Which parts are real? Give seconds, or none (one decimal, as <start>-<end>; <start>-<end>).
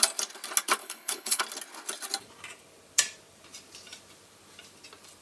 0.0-0.8; 1.4-5.2